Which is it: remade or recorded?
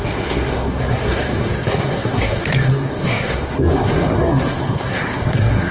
remade